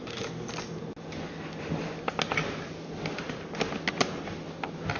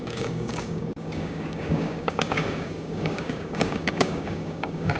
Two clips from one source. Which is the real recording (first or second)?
first